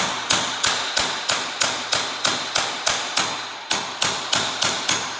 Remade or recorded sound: recorded